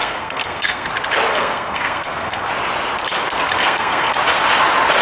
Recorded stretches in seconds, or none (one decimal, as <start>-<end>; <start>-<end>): 0.9-1.3; 2.5-3.6; 4.1-5.0